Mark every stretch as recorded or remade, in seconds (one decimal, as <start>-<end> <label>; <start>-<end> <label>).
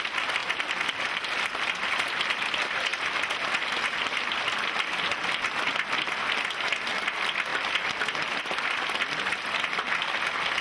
0.0-10.6 recorded